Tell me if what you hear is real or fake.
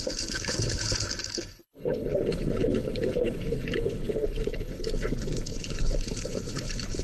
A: fake